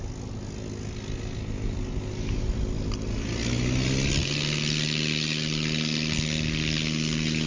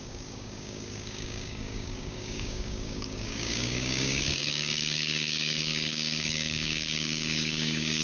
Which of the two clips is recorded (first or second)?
first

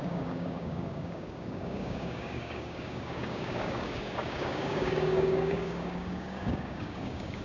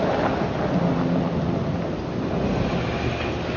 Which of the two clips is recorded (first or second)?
second